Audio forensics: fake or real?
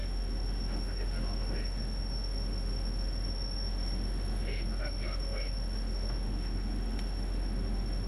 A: fake